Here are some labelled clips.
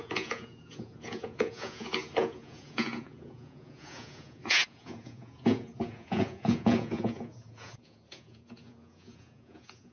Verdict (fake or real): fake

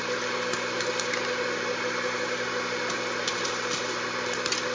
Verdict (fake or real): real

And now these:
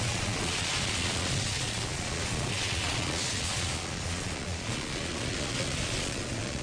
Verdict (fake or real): fake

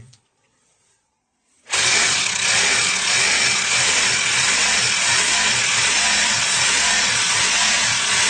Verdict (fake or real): fake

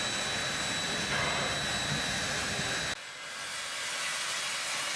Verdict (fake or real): real